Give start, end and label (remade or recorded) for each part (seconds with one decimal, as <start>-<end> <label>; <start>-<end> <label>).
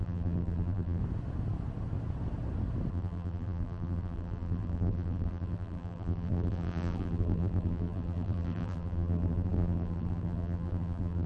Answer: 0.0-1.0 remade; 1.0-2.9 recorded; 2.9-11.3 remade